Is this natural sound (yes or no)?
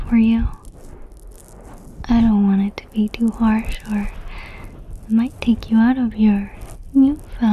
yes